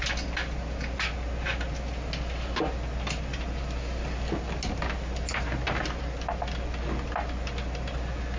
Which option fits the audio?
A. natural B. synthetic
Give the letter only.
A